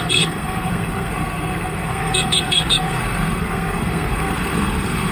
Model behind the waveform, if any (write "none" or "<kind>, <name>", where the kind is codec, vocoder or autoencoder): codec, SNAC